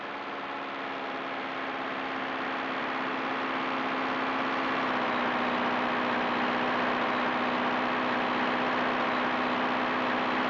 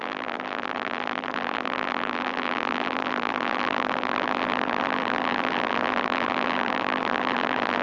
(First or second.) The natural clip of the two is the first